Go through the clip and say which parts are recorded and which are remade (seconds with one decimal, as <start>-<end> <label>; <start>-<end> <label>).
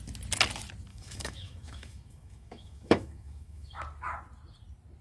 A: 0.0-0.9 recorded; 0.9-3.8 remade; 3.8-5.0 recorded